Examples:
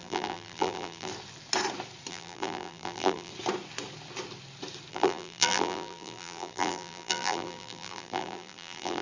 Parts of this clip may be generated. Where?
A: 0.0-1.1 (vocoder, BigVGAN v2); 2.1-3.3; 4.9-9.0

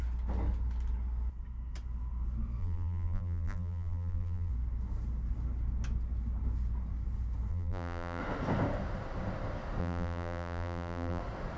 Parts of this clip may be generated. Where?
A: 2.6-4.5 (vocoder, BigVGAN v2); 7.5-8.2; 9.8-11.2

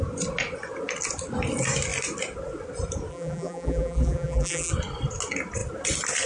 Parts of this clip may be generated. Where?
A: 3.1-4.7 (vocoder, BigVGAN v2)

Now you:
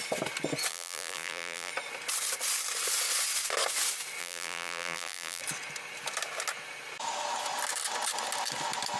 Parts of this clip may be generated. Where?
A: 0.7-1.7 (vocoder, BigVGAN v2); 4.2-5.4

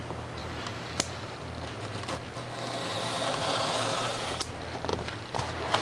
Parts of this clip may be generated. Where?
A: 0.4-1.4 (vocoder, BigVGAN v2); 2.8-4.3; 4.9-5.8